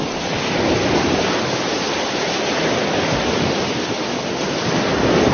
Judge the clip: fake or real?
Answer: real